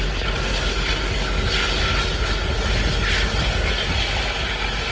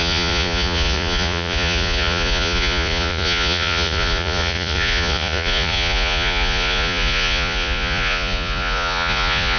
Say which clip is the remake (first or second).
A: second